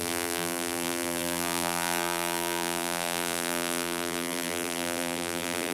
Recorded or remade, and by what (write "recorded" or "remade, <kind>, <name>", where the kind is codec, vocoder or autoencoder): remade, vocoder, BigVGAN v2